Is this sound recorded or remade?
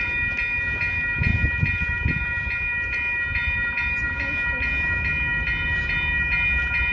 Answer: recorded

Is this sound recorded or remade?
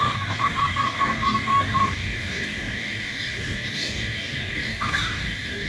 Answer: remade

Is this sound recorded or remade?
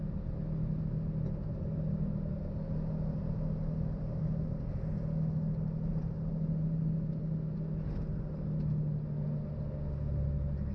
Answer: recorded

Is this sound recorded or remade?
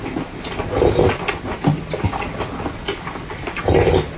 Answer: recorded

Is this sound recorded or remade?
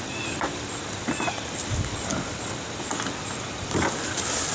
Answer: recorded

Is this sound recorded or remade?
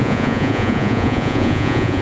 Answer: remade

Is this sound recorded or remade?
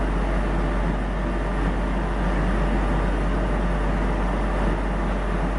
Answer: recorded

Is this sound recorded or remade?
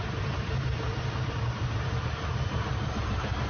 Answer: remade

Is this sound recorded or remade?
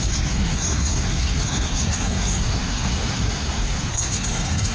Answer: remade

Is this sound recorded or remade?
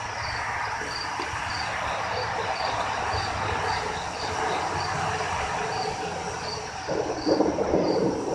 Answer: recorded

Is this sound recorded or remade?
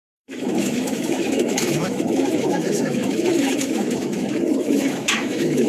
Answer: remade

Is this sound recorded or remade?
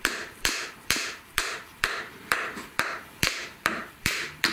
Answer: remade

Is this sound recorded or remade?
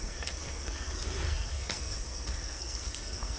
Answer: remade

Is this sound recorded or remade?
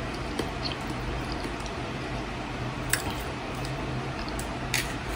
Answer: remade